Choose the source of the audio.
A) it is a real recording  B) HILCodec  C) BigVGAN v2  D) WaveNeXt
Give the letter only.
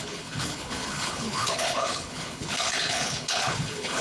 B